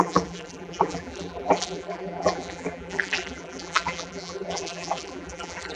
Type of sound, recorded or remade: remade